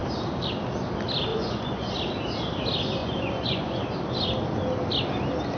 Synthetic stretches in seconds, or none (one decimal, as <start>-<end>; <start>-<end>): 1.3-1.9; 3.0-3.8